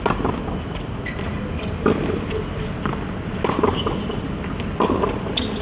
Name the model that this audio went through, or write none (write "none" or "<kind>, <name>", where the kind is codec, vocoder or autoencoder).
none